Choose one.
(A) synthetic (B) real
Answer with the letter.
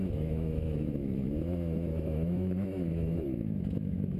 A